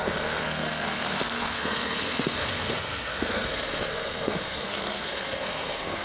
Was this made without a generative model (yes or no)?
no